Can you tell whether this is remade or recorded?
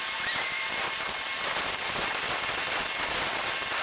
recorded